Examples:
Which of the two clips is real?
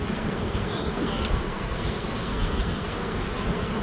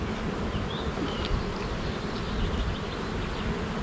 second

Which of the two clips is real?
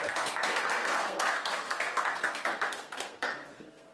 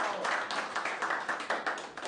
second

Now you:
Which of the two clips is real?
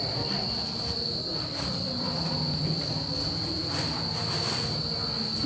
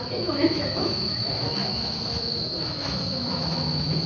first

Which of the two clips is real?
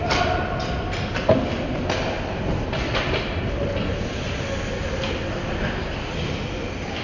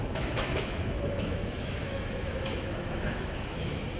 first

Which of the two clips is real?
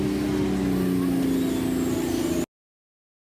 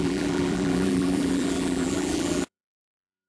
first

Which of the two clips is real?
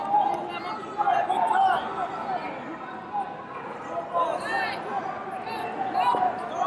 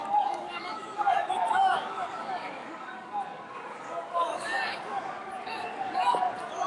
first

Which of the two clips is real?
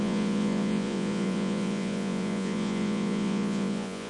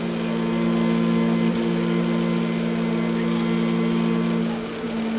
second